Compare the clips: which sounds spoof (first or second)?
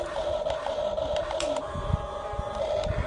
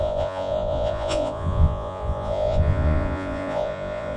second